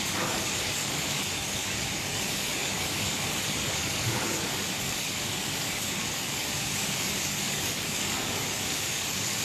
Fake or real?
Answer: fake